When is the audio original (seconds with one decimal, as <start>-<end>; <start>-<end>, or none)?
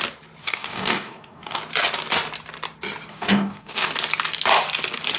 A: 0.0-0.4; 1.6-3.1; 3.9-5.2